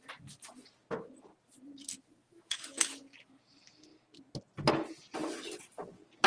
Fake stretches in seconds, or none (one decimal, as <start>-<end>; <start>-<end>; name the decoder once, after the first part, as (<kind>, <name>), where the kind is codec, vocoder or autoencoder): 2.2-3.0 (autoencoder, DAC-VAE)